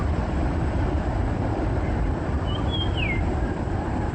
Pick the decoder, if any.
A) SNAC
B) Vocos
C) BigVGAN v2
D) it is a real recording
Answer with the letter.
D